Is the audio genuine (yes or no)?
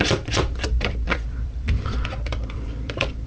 no